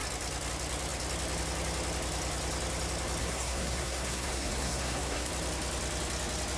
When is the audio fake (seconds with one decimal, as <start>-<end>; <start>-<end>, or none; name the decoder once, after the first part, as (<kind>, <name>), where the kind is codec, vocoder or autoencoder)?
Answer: 3.2-5.3 (codec, SNAC)